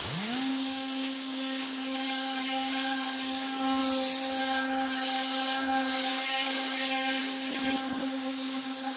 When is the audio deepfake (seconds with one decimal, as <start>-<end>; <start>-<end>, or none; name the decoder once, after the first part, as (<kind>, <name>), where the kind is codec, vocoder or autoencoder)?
0.0-3.8 (codec, DAC); 4.4-9.0